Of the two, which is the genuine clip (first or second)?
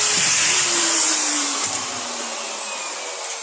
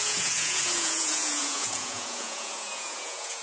first